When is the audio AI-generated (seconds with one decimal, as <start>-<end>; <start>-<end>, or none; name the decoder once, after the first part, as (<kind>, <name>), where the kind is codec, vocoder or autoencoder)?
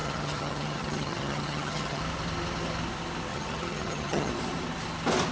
0.0-2.0 (vocoder, HiFi-GAN); 3.3-4.3